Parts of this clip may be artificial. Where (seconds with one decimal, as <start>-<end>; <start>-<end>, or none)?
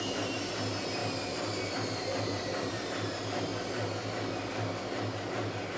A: 0.0-3.5